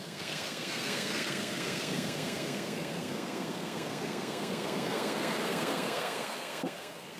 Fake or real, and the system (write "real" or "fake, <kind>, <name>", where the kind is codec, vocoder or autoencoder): fake, codec, SNAC